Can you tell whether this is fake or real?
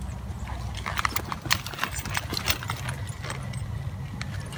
real